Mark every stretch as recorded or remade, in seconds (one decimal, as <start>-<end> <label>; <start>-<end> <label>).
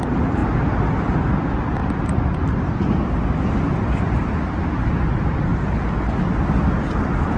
0.0-1.8 remade; 1.8-4.1 recorded; 4.1-5.5 remade; 5.5-6.5 recorded; 6.5-7.4 remade